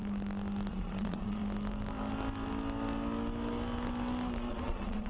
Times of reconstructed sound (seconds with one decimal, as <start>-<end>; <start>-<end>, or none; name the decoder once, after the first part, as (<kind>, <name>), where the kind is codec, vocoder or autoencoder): 0.7-1.4 (vocoder, Vocos); 4.5-5.1

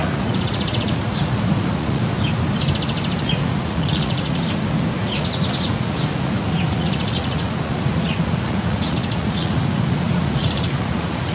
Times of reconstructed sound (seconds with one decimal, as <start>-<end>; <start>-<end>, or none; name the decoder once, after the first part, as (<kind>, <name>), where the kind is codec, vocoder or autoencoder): 0.0-2.0 (vocoder, Vocos); 3.2-4.4; 5.0-11.3

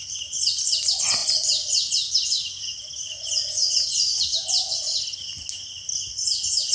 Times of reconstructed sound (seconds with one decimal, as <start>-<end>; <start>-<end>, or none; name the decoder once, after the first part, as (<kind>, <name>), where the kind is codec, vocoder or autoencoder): none

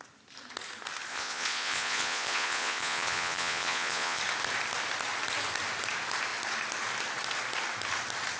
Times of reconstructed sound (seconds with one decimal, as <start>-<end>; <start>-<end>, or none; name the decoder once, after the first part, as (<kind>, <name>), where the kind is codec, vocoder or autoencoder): 1.1-4.2 (vocoder, Vocos)

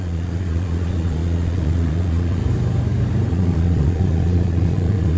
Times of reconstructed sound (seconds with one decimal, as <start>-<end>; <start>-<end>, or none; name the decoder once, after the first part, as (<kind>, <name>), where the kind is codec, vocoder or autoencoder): 0.0-2.4 (vocoder, Vocos); 3.3-5.2